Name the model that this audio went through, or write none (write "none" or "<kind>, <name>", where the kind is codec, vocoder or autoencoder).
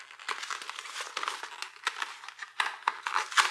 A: none